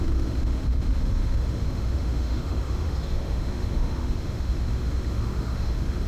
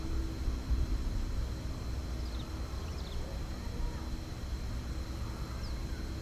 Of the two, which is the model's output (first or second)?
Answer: first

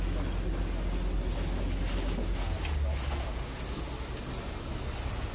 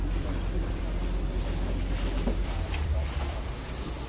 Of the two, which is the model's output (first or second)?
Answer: second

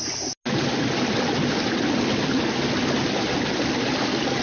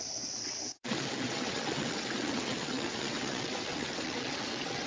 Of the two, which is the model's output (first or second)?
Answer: second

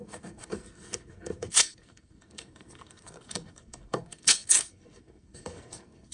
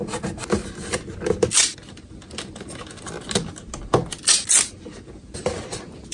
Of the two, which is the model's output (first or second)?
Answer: first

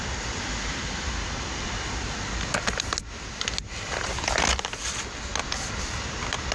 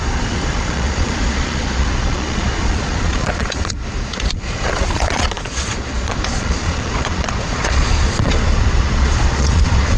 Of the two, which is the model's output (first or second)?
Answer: second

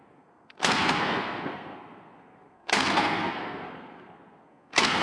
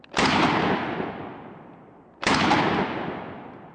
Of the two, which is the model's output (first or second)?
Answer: first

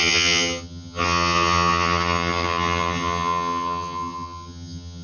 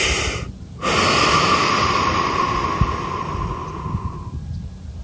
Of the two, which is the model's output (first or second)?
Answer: first